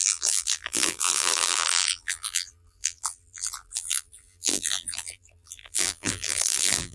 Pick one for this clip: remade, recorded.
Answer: remade